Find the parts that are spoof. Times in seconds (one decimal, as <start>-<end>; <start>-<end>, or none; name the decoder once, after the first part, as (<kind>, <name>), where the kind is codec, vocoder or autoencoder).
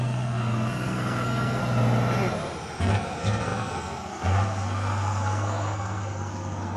0.0-1.6 (codec, SNAC); 2.8-6.8